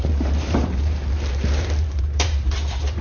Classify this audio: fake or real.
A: fake